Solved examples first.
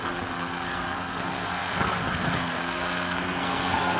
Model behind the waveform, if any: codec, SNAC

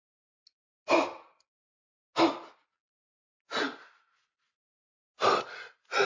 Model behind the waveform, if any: none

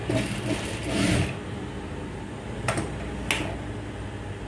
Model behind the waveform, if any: none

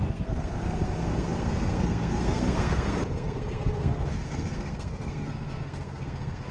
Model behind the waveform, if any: codec, SNAC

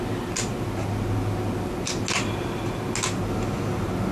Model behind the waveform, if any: none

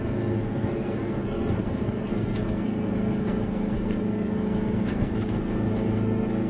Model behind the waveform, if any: codec, SNAC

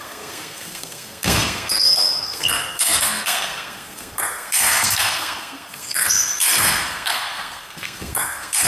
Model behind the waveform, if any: codec, SNAC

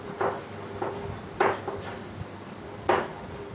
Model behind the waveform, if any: none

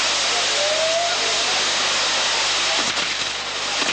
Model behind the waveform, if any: none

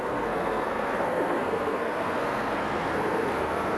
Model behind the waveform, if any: codec, SNAC